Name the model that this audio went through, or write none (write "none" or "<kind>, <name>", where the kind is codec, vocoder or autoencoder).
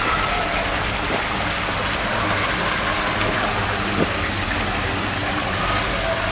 none